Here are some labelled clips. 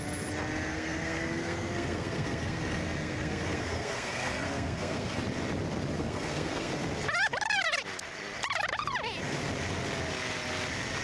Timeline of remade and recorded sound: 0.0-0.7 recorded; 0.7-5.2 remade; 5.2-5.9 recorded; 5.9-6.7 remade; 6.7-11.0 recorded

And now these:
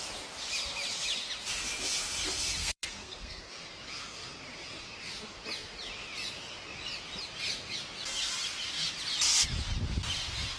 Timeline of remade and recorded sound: 0.0-2.6 recorded; 2.6-3.4 remade; 3.4-10.6 recorded

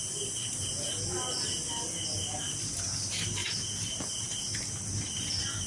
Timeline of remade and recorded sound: 0.0-5.7 recorded

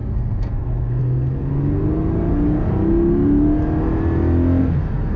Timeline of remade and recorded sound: 0.0-1.5 remade; 1.5-4.6 recorded; 4.6-5.2 remade

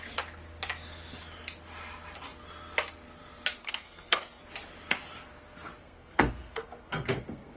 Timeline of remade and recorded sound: 0.0-3.6 recorded; 3.6-4.4 remade; 4.4-5.8 recorded; 5.8-7.6 remade

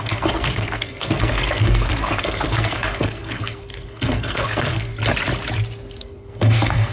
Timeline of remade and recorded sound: 0.0-4.9 remade; 4.9-6.0 recorded; 6.0-6.9 remade

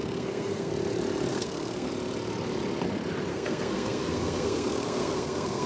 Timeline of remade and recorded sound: 0.0-0.7 remade; 0.7-1.3 recorded; 1.3-1.9 remade; 1.9-3.3 recorded; 3.3-5.7 remade

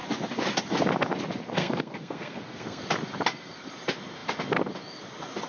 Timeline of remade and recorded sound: 0.0-1.5 recorded; 1.5-2.8 remade; 2.8-5.5 recorded